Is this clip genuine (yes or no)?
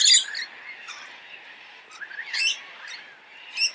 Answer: yes